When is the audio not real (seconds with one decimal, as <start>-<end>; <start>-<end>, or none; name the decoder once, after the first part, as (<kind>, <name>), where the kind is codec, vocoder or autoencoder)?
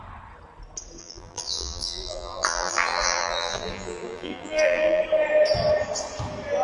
1.0-5.0 (vocoder, BigVGAN v2)